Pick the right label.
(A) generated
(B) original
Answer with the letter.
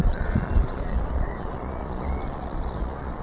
A